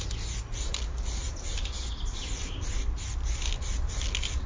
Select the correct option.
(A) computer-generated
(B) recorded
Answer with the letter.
B